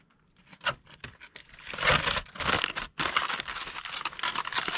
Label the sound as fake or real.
real